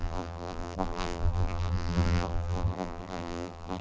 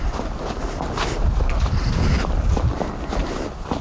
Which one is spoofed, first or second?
first